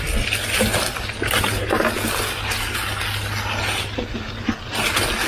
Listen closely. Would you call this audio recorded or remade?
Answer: recorded